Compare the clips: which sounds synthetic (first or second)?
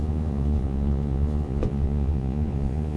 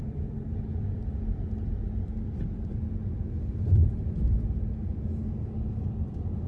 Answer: first